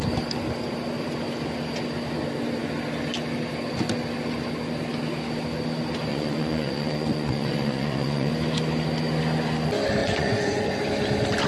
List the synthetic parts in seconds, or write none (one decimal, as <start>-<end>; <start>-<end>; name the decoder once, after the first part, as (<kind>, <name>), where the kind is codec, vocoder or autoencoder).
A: 6.1-8.3 (vocoder, Vocos); 10.0-10.8

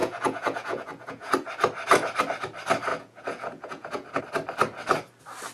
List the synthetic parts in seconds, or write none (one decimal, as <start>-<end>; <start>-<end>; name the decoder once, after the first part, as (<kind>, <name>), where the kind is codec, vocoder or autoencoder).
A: 0.0-1.3 (vocoder, Vocos); 2.9-4.2

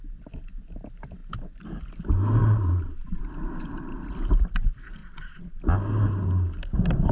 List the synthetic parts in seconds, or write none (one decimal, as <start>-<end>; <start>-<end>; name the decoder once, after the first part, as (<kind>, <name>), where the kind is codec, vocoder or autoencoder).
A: 2.4-3.2 (vocoder, Vocos); 5.0-5.6

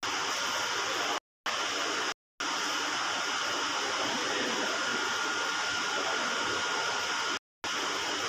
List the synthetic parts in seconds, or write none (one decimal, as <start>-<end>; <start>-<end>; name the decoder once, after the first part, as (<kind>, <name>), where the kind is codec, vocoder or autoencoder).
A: none

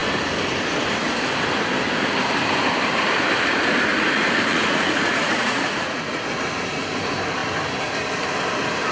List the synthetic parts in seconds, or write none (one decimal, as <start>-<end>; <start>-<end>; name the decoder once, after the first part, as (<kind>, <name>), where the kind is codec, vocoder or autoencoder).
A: 3.9-6.3 (vocoder, Vocos)